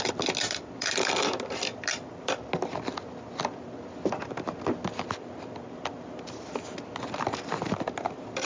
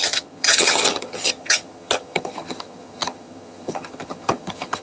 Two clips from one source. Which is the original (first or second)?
first